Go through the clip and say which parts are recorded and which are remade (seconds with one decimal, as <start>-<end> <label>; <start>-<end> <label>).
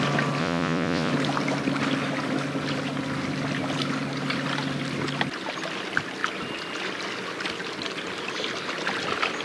0.0-0.4 recorded; 0.4-1.1 remade; 1.1-9.4 recorded